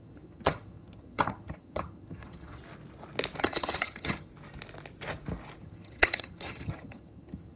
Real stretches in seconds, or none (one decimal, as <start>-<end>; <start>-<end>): 2.6-3.4; 4.3-5.6